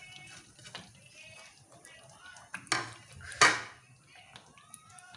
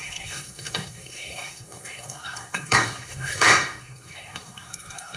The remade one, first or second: second